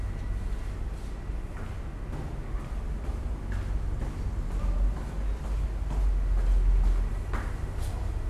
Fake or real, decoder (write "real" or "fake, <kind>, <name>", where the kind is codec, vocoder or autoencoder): real